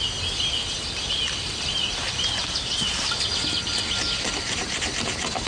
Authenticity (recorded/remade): recorded